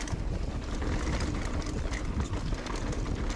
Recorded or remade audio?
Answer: recorded